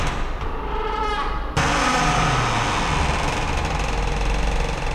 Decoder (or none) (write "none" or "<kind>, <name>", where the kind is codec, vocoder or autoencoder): none